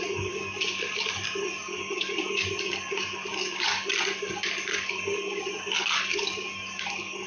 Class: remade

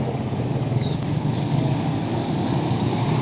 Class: remade